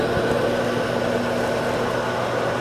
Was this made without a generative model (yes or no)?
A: yes